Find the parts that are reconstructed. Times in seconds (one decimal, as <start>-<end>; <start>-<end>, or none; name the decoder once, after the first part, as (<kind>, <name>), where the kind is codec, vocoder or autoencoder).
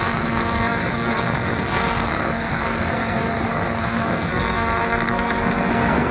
0.0-6.1 (codec, SNAC)